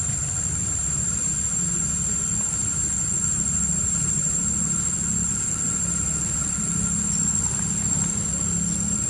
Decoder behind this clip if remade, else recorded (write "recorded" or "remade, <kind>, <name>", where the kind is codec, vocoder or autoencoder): recorded